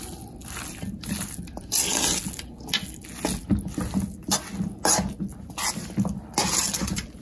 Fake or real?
real